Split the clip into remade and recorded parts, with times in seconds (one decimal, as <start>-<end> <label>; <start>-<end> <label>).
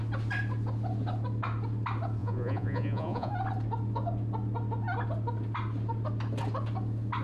0.0-2.2 recorded; 2.2-3.3 remade; 3.3-7.2 recorded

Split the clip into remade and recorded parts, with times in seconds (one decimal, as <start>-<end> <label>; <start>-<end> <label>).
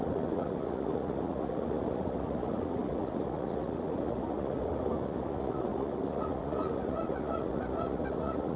0.0-8.6 remade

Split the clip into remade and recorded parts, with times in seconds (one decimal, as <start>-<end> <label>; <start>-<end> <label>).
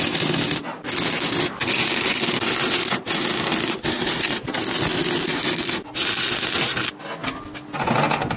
0.0-8.4 recorded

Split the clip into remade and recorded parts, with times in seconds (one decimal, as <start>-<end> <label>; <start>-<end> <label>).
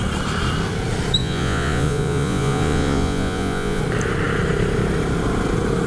0.0-1.2 recorded; 1.2-3.8 remade; 3.8-5.9 recorded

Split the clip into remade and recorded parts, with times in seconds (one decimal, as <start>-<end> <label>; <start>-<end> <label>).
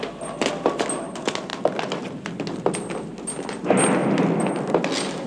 0.0-5.3 recorded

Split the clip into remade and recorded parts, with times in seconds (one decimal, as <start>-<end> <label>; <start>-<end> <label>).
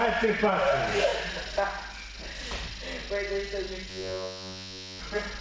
0.0-3.9 recorded; 3.9-5.0 remade; 5.0-5.4 recorded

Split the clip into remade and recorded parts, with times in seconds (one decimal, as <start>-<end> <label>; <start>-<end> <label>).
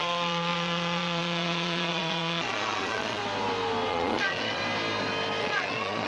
0.0-3.2 remade; 3.2-3.9 recorded; 3.9-4.6 remade; 4.6-5.4 recorded; 5.4-6.1 remade